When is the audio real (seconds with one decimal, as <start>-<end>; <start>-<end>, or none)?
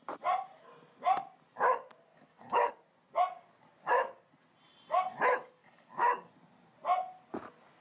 0.0-2.1; 2.7-5.6; 6.3-7.8